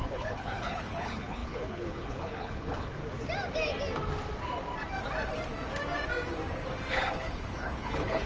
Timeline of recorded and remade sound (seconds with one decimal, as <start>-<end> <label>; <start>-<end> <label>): 0.0-3.0 remade; 3.0-6.9 recorded; 6.9-8.3 remade